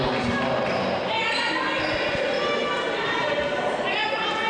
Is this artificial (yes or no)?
no